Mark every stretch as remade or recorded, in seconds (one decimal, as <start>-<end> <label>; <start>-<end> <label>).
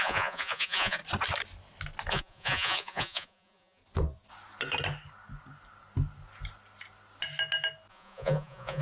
0.0-1.0 remade; 1.0-2.1 recorded; 2.1-3.8 remade; 3.8-7.9 recorded; 7.9-8.8 remade